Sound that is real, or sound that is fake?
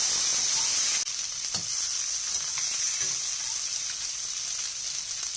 real